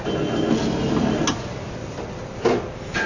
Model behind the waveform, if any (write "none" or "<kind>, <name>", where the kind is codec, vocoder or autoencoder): none